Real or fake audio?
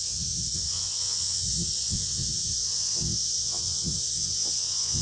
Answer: fake